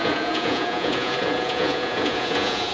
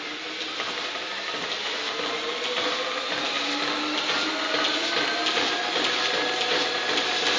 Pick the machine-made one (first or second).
first